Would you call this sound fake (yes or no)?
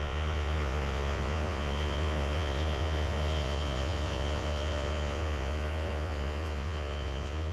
yes